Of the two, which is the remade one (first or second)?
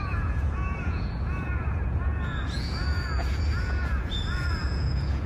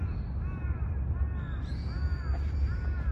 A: first